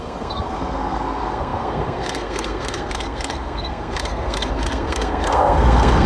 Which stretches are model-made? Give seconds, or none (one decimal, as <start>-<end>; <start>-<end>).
0.0-6.1